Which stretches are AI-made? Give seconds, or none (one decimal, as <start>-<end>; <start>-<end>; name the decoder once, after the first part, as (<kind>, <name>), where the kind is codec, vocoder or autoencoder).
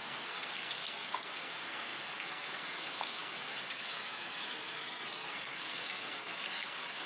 0.0-7.1 (codec, SNAC)